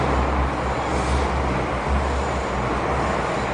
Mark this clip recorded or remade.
recorded